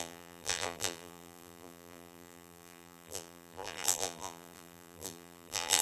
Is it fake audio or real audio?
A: fake